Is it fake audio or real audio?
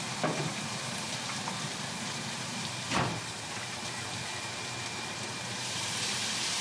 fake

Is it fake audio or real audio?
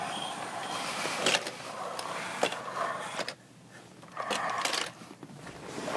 real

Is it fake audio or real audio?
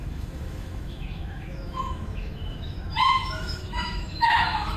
fake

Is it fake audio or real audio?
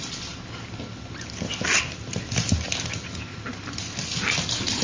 real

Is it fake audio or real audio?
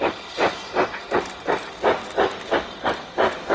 real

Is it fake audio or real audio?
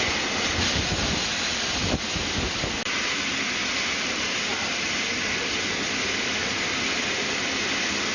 real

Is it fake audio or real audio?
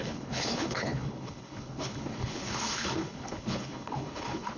fake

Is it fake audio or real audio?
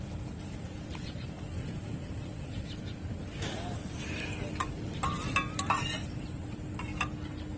real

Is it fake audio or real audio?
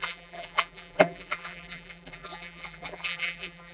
fake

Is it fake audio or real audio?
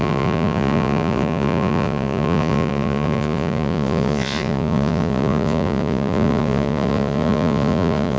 fake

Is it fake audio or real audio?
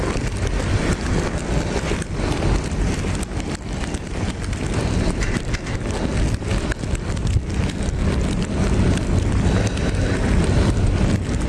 real